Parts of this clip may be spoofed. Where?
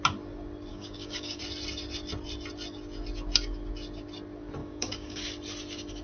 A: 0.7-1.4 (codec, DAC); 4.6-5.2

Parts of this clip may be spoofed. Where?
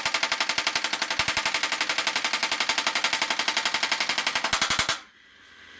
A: none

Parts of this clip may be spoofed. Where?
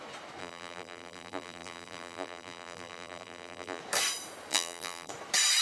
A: 0.4-3.8 (vocoder, BigVGAN v2); 4.5-5.1